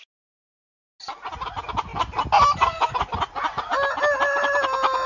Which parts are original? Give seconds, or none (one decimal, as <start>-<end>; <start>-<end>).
0.0-5.1